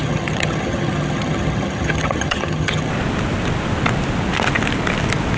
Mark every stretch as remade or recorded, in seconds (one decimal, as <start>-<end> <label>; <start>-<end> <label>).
0.0-2.9 remade; 2.9-5.4 recorded